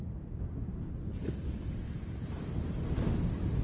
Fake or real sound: real